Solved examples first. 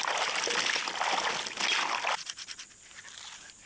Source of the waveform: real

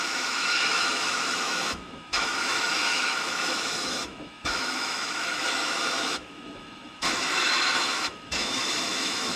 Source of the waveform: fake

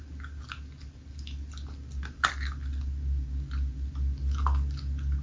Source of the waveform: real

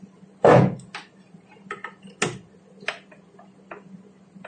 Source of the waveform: real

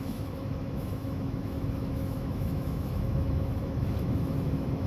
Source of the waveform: fake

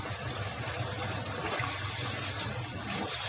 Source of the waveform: real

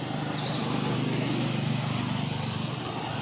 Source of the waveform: real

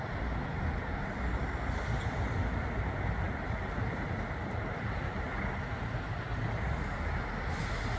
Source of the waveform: real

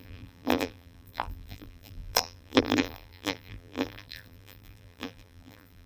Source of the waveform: fake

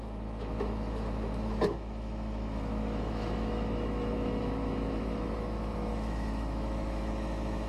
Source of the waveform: fake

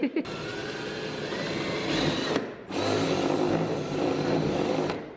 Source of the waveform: real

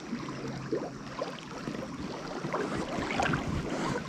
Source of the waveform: real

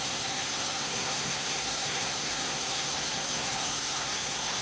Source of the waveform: fake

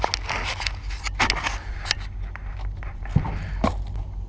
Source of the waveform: real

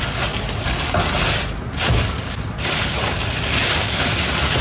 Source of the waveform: real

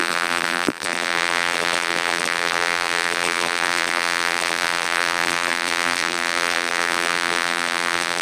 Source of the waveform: fake